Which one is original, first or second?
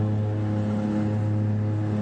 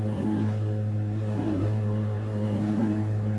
first